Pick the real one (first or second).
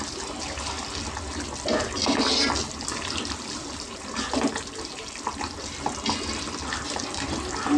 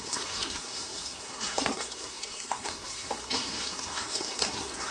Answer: first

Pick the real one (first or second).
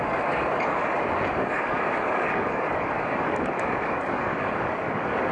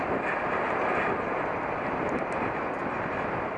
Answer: second